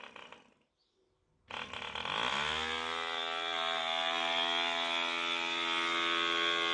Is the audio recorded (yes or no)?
yes